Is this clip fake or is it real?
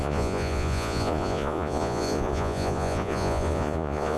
fake